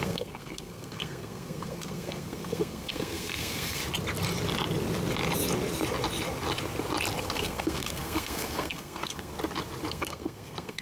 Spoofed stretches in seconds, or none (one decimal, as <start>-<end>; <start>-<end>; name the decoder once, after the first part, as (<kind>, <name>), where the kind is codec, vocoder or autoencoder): 0.0-3.8 (codec, SNAC); 7.2-9.3; 9.9-10.8